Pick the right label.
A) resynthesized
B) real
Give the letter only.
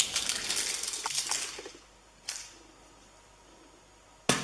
B